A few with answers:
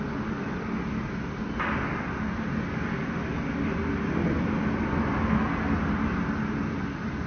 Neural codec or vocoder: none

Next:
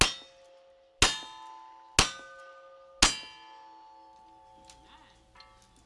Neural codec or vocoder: none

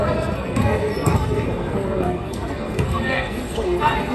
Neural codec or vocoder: codec, SNAC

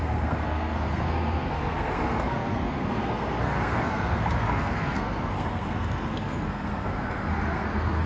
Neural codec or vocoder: codec, SNAC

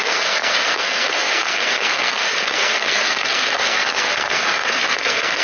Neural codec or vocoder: codec, SNAC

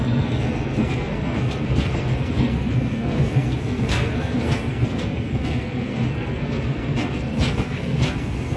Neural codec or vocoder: codec, SNAC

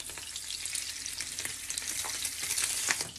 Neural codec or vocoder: none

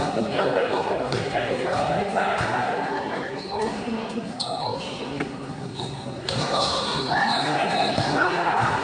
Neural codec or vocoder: codec, SNAC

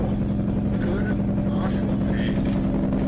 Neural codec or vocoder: none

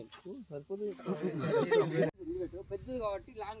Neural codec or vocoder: none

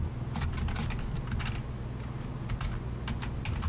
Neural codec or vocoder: none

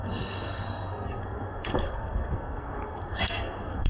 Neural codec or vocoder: codec, SNAC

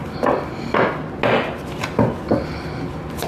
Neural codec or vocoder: none